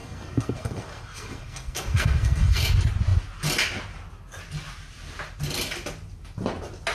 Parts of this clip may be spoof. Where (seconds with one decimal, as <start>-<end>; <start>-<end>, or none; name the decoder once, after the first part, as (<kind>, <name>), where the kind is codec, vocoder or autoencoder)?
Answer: 0.0-2.7 (codec, SNAC)